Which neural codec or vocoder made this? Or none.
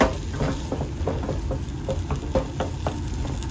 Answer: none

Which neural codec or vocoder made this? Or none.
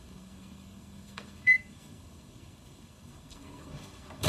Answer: codec, SNAC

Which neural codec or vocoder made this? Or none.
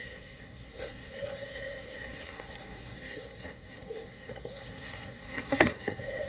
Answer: codec, SNAC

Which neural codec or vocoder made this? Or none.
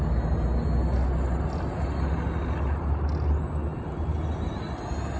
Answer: none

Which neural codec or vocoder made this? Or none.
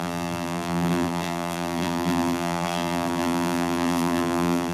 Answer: vocoder, BigVGAN v2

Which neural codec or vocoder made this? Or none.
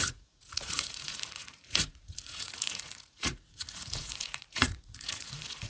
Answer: vocoder, Vocos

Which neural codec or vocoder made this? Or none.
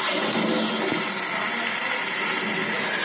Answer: none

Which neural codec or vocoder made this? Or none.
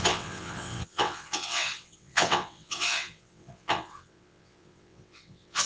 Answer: vocoder, WaveNeXt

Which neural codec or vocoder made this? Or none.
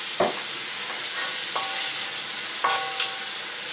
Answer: none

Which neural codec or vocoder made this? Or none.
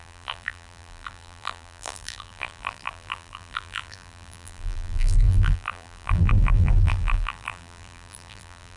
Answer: vocoder, BigVGAN v2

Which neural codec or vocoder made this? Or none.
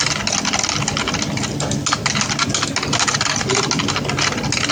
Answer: none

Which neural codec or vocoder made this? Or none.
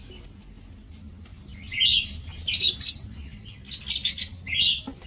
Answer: none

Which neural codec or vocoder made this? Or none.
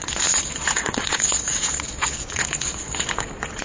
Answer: vocoder, Vocos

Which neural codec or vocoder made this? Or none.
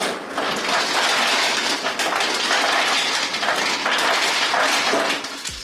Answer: none